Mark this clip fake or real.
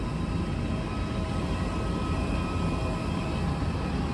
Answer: real